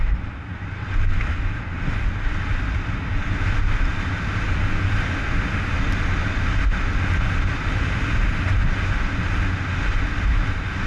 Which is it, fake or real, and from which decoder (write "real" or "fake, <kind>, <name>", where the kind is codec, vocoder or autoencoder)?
real